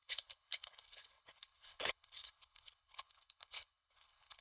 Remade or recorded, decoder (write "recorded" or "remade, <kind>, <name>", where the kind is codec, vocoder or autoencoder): remade, codec, HILCodec